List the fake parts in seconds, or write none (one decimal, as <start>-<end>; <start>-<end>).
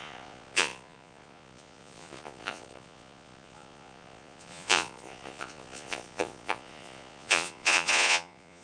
0.0-8.6